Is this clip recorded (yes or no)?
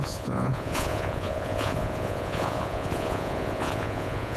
no